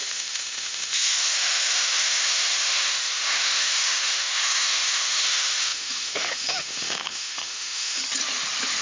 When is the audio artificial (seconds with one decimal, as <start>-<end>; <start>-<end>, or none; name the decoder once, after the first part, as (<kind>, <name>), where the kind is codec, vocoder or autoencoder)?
0.0-8.0 (autoencoder, DAC-VAE)